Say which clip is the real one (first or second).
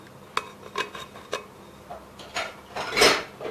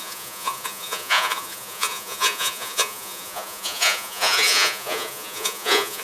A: first